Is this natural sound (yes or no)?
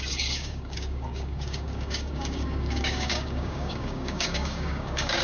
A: no